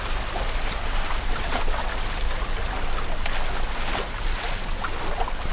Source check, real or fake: real